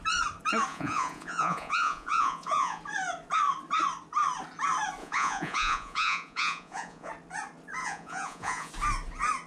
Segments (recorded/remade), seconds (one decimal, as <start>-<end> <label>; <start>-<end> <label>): 0.0-0.7 recorded; 0.7-2.8 remade; 2.8-5.0 recorded; 5.0-7.1 remade; 7.1-7.8 recorded; 7.8-8.7 remade; 8.7-9.5 recorded